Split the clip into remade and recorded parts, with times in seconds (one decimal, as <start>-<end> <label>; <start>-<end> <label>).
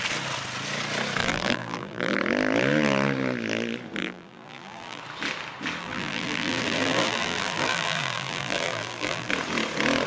0.0-1.2 recorded; 1.2-2.2 remade; 2.2-4.0 recorded; 4.0-5.0 remade; 5.0-5.8 recorded; 5.8-9.3 remade; 9.3-10.1 recorded